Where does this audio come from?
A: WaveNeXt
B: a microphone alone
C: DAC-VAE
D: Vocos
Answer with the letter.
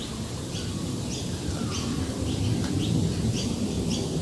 B